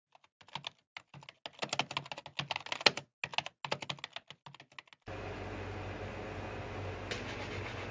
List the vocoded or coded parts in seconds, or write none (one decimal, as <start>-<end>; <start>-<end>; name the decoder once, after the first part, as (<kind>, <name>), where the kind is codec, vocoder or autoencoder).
none